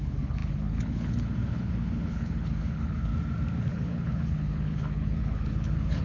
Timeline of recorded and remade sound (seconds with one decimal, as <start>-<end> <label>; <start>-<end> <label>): 0.0-3.1 remade; 3.1-3.6 recorded; 3.6-6.0 remade